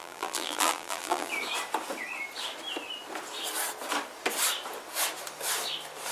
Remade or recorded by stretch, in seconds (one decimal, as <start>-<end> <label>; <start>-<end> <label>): 0.0-1.3 remade; 1.3-6.1 recorded